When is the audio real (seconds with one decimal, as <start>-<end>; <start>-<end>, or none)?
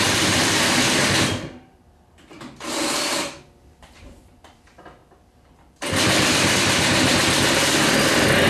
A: none